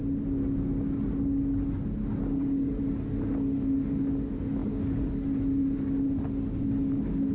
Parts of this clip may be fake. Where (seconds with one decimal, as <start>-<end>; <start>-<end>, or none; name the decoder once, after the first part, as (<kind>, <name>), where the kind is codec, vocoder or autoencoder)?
none